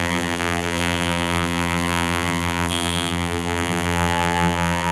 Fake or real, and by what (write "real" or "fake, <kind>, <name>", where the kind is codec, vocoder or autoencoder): fake, vocoder, BigVGAN v2